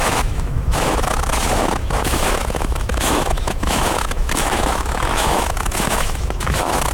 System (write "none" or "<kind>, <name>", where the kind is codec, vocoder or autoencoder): autoencoder, DAC-VAE